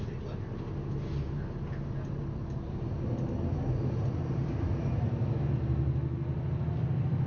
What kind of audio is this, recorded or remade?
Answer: recorded